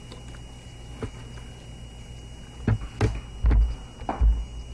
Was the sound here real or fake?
real